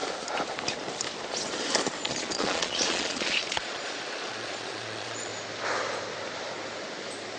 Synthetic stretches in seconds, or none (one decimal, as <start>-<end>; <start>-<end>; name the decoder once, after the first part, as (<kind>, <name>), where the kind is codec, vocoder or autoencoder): 2.1-5.3 (vocoder, Vocos)